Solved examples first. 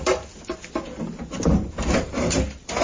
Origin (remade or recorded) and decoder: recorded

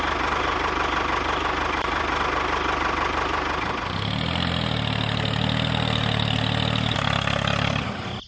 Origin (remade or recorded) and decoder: recorded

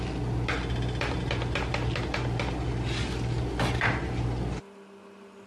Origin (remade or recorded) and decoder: recorded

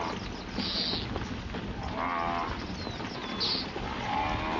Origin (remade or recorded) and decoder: recorded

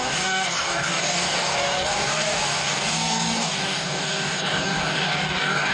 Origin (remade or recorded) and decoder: remade, codec, DAC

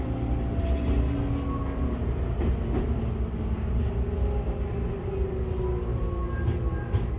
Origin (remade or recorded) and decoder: recorded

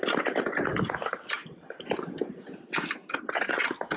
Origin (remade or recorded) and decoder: recorded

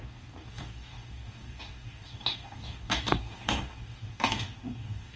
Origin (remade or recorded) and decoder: remade, codec, DAC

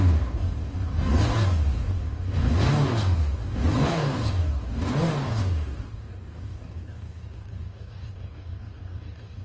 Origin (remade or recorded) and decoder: remade, codec, DAC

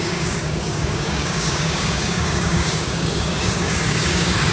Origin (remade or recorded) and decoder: remade, codec, DAC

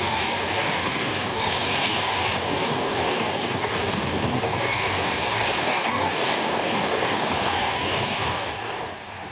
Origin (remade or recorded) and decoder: remade, codec, DAC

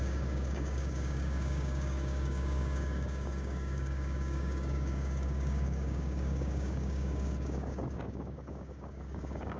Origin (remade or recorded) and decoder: remade, codec, DAC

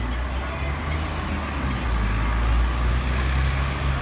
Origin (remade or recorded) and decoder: recorded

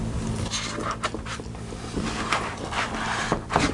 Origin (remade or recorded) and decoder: recorded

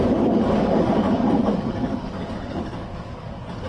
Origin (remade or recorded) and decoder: remade, codec, DAC